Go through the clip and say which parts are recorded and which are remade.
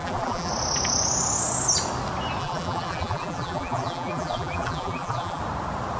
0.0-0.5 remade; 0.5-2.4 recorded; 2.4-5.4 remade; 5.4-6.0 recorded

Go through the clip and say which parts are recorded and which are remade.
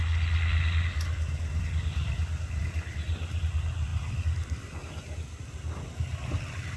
0.0-6.8 recorded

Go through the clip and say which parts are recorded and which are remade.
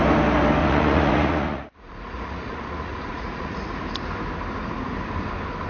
0.0-0.6 recorded; 0.6-3.7 remade; 3.7-5.7 recorded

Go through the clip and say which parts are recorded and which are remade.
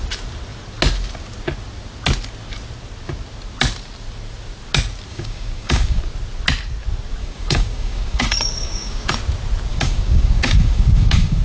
0.0-5.1 recorded; 5.1-6.0 remade; 6.0-7.2 recorded; 7.2-9.1 remade; 9.1-9.7 recorded; 9.7-11.4 remade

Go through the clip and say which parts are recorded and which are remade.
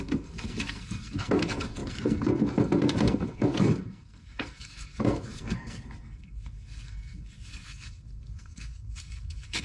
0.0-9.6 remade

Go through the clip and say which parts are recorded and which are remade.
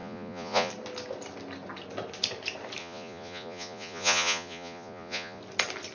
0.0-0.7 remade; 0.7-2.8 recorded; 2.8-5.4 remade; 5.4-5.9 recorded